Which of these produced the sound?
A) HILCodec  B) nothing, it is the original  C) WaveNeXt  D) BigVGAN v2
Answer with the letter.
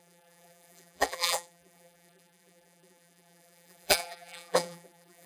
D